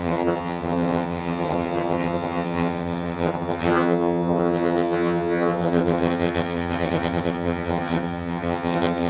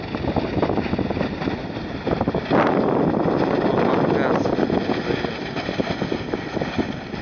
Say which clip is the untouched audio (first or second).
second